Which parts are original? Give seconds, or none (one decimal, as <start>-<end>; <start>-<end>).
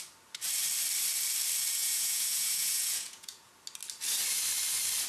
0.0-1.8; 3.5-5.1